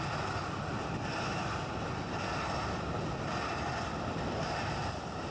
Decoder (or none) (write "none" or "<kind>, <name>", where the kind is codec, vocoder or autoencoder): none